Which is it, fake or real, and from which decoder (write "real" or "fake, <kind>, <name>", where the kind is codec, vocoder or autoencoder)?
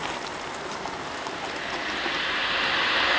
real